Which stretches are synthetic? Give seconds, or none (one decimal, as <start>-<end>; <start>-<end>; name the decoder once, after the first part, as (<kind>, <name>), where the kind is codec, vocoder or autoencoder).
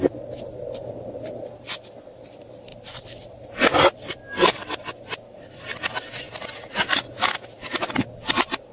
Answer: none